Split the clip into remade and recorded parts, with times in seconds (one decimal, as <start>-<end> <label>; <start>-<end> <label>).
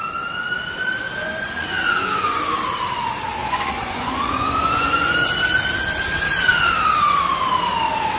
0.0-1.2 recorded; 1.2-2.4 remade; 2.4-3.4 recorded; 3.4-5.3 remade; 5.3-8.2 recorded